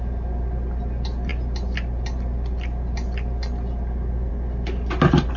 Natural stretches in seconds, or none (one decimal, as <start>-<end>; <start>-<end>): 0.0-5.4